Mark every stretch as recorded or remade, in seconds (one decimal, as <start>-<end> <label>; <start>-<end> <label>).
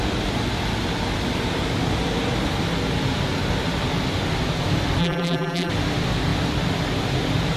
0.0-5.0 recorded; 5.0-5.7 remade; 5.7-7.6 recorded